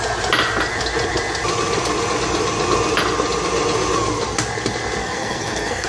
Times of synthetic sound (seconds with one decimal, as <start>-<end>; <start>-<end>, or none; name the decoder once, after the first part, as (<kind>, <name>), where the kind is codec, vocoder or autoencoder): 5.0-5.9 (codec, SNAC)